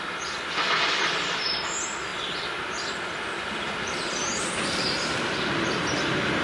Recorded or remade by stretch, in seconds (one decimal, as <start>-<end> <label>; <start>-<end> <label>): 0.0-6.4 recorded